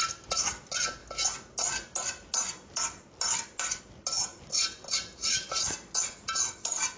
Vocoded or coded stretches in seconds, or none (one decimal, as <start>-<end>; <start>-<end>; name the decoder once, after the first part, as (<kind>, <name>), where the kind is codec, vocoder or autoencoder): none